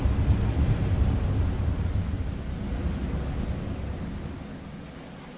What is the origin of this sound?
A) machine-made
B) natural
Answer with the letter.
B